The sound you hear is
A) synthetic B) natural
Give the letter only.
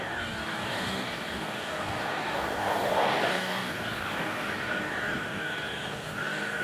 A